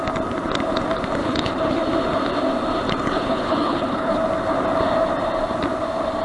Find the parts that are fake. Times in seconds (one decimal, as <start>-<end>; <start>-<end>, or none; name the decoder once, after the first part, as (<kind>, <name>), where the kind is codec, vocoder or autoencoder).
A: 1.2-1.8 (codec, HILCodec); 3.0-4.2